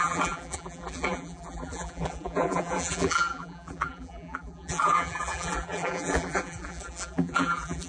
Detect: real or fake fake